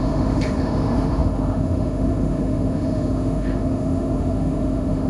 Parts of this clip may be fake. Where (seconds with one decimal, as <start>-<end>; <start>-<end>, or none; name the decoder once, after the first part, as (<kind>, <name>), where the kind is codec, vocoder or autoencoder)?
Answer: 0.0-5.1 (autoencoder, DAC-VAE)

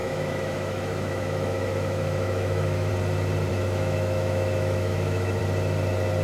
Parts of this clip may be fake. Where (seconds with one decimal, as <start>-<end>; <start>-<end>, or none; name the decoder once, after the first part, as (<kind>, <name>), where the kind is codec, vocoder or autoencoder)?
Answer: 0.0-2.9 (autoencoder, DAC-VAE); 3.5-5.4